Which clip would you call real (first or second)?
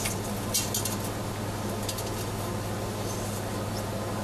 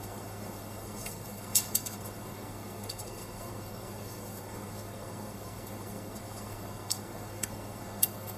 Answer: first